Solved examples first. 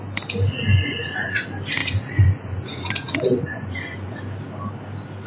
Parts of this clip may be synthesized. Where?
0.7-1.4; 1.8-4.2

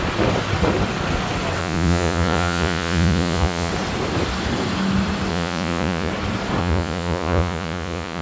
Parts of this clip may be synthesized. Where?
1.6-3.7; 5.3-6.1; 6.6-8.2